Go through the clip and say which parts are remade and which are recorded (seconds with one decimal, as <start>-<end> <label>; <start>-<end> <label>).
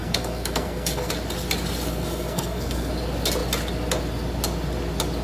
0.0-1.1 remade; 1.1-1.9 recorded; 1.9-2.9 remade; 2.9-5.2 recorded